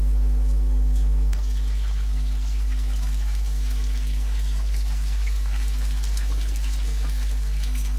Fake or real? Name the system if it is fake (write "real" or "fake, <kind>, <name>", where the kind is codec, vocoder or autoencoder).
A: fake, codec, SNAC